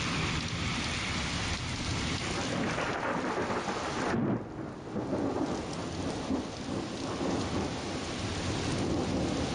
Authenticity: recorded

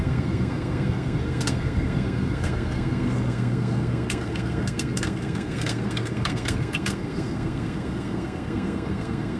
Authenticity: remade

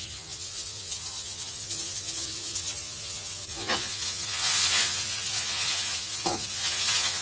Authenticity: remade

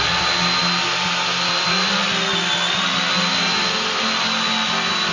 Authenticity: recorded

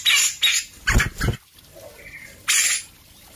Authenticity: recorded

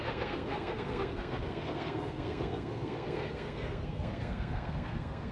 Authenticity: remade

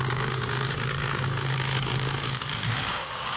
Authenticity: remade